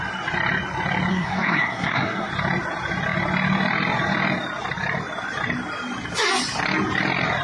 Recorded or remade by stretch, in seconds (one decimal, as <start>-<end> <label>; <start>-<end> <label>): 0.0-1.1 recorded; 1.1-2.3 remade; 2.3-7.4 recorded